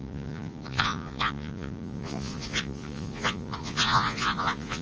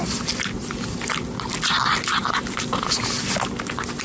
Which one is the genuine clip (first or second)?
second